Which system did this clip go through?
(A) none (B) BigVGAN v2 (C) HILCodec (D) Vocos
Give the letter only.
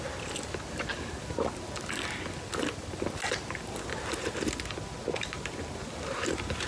A